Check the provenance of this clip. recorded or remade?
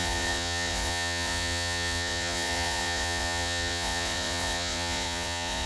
remade